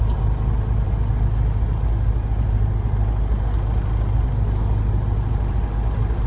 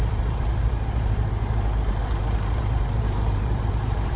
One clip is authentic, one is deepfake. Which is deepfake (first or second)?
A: second